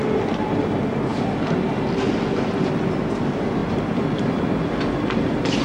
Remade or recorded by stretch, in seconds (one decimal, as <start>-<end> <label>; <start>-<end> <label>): 0.0-5.6 recorded